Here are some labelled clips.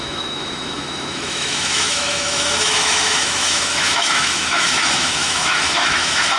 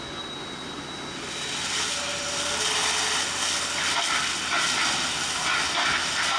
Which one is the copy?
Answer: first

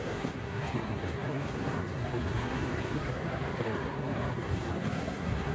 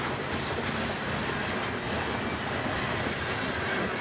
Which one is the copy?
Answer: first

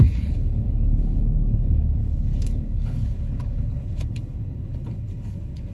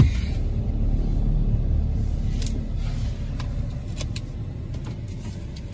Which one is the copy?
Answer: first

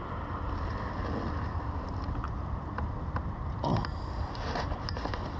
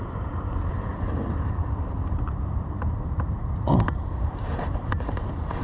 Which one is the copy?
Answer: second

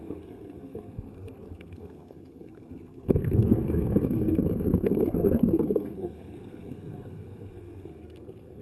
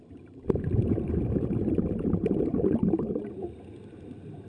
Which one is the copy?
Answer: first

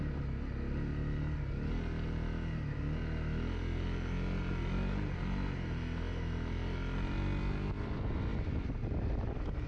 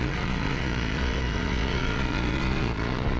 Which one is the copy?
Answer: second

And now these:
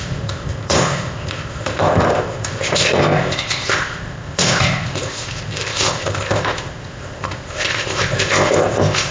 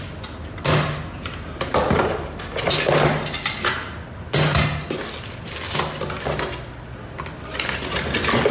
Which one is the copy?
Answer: first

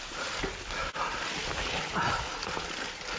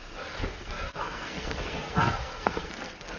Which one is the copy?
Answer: second